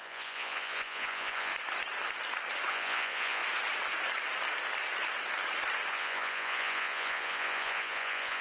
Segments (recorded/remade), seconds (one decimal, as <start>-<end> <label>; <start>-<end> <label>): 0.0-1.5 remade; 1.5-2.7 recorded; 2.7-3.4 remade; 3.4-5.9 recorded; 5.9-8.4 remade